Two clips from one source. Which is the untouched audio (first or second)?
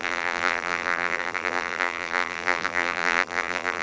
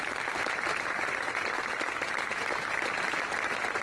second